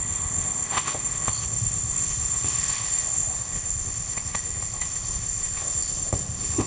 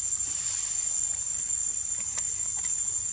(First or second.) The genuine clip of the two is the second